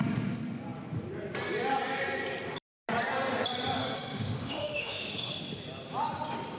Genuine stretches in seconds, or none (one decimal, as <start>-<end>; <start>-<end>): 0.0-3.8; 5.3-6.6